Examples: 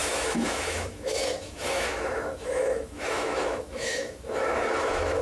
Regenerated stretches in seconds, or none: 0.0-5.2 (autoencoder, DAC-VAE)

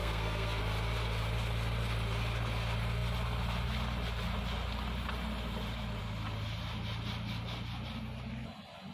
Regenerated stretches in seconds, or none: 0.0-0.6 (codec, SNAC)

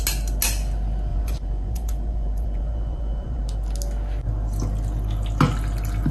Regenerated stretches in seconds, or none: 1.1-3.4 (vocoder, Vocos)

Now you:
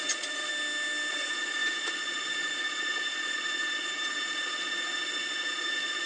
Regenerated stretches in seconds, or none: 0.0-0.5 (vocoder, Vocos); 1.1-6.1

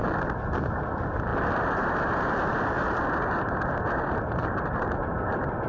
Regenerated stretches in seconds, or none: none

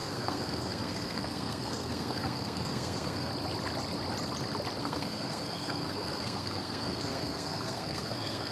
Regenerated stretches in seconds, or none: 0.0-3.3 (codec, SNAC); 4.8-8.5